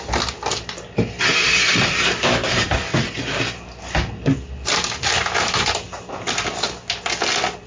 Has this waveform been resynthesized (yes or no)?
no